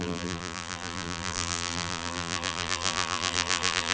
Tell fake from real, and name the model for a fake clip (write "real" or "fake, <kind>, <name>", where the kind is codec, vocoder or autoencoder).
fake, vocoder, BigVGAN v2